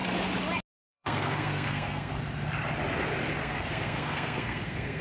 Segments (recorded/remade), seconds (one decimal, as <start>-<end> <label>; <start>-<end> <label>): 0.0-0.9 recorded; 0.9-2.1 remade; 2.1-3.4 recorded; 3.4-5.0 remade